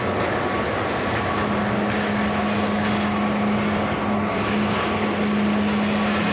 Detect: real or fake real